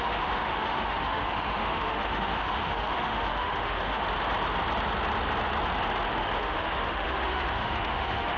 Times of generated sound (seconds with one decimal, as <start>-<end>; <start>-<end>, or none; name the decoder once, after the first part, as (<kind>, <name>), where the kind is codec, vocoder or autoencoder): 0.0-4.0 (autoencoder, DAC-VAE); 6.4-8.4